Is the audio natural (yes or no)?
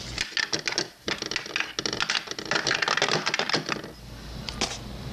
yes